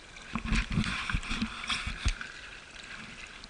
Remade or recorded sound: recorded